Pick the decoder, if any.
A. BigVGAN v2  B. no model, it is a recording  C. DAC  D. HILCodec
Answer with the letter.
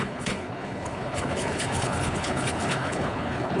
D